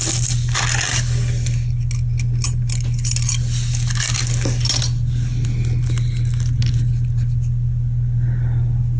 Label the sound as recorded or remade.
recorded